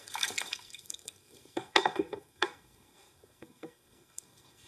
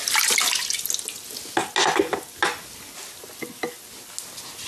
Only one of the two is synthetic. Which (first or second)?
first